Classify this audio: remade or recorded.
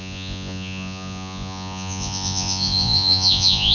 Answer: remade